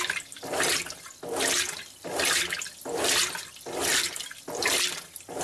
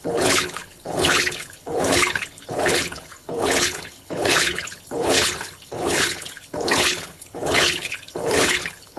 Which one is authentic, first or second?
first